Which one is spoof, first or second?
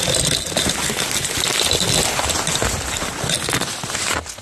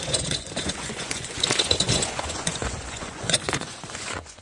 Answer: second